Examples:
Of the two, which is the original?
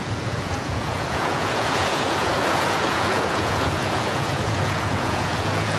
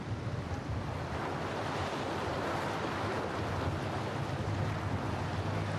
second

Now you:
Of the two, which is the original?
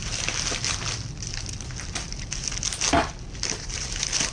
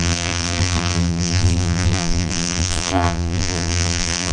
first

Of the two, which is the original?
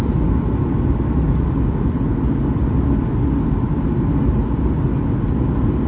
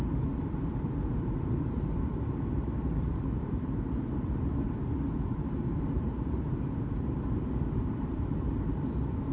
first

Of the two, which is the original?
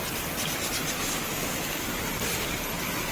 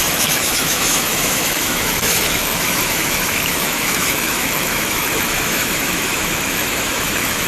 first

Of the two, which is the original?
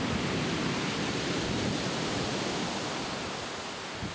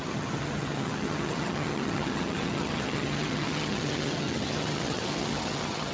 first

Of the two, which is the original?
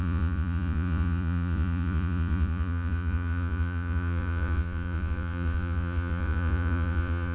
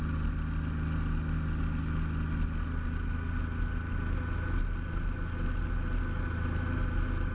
second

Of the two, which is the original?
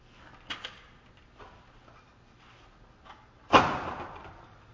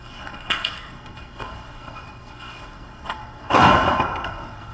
first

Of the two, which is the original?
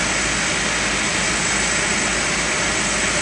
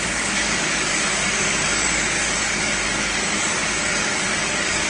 first